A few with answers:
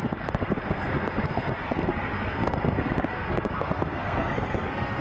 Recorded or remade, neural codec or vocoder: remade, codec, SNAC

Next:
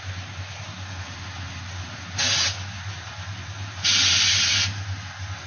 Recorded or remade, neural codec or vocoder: recorded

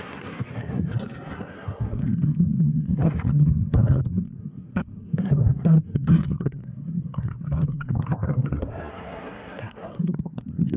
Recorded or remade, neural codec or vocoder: remade, codec, SNAC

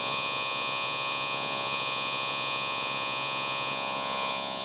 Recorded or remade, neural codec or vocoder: remade, vocoder, Vocos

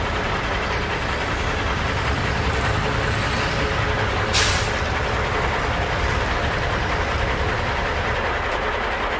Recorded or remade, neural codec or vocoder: recorded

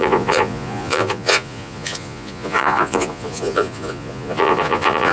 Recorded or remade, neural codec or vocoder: remade, vocoder, Vocos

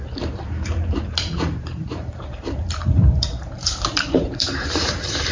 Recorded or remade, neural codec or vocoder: remade, vocoder, BigVGAN v2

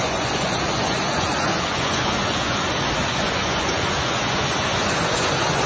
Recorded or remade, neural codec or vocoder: remade, vocoder, Vocos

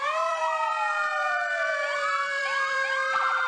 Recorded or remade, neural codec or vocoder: remade, vocoder, BigVGAN v2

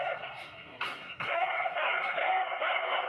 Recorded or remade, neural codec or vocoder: remade, codec, SNAC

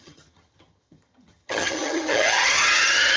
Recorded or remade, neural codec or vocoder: remade, vocoder, HiFi-GAN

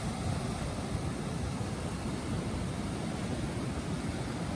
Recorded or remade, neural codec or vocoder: recorded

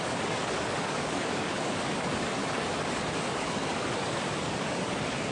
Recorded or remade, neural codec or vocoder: remade, codec, DAC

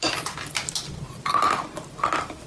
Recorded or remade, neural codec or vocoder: recorded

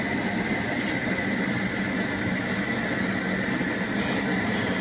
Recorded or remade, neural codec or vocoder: recorded